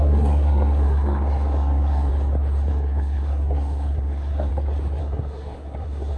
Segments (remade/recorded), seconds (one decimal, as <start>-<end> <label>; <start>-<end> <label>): 0.0-2.1 remade; 2.1-2.7 recorded; 2.7-4.5 remade; 4.5-5.0 recorded; 5.0-6.2 remade

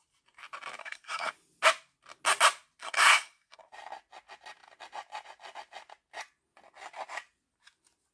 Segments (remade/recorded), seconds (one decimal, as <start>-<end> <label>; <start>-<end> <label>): 0.0-0.8 recorded; 0.8-1.3 remade; 1.3-2.8 recorded; 2.8-3.7 remade; 3.7-8.1 recorded

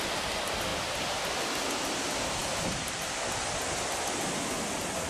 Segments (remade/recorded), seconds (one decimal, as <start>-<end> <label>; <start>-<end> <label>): 0.0-5.1 recorded

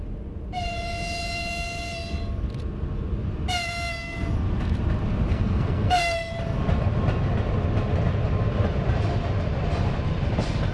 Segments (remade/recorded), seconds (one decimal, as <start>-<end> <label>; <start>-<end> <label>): 0.0-5.3 recorded; 5.3-6.3 remade; 6.3-10.7 recorded

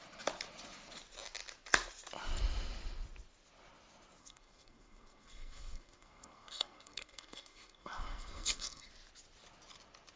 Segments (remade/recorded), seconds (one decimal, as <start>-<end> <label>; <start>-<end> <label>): 0.0-4.2 recorded; 4.2-8.9 remade; 8.9-10.2 recorded

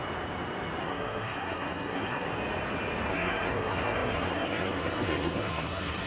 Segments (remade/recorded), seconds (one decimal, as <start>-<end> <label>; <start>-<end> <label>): 0.0-0.8 recorded; 0.8-2.3 remade; 2.3-3.1 recorded; 3.1-6.1 remade

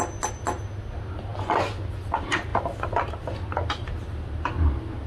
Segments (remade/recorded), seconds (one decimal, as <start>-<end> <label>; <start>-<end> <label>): 0.0-5.1 recorded